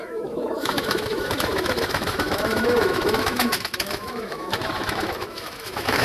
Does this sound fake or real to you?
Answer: fake